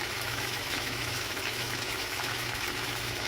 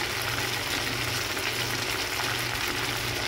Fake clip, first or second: first